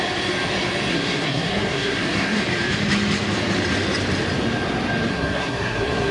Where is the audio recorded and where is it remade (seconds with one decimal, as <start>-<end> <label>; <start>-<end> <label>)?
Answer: 0.0-0.9 recorded; 0.9-2.4 remade; 2.4-5.1 recorded; 5.1-6.1 remade